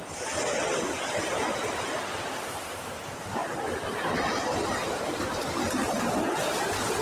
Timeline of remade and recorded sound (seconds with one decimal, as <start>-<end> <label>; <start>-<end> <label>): 0.0-7.0 recorded